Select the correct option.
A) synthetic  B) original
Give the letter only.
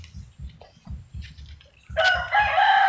B